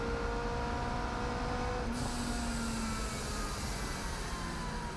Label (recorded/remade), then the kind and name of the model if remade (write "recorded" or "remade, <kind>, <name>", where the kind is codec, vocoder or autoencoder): recorded